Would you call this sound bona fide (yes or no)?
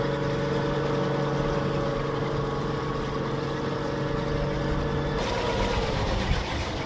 yes